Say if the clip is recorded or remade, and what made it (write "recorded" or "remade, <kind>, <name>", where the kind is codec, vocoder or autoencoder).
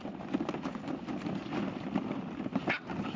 recorded